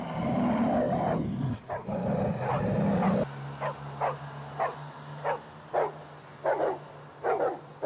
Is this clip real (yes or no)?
yes